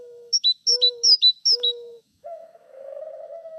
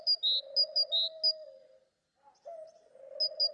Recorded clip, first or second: second